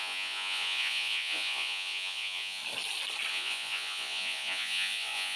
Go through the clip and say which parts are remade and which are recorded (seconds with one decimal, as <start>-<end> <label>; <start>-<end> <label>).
0.0-2.6 remade; 2.6-3.3 recorded; 3.3-5.4 remade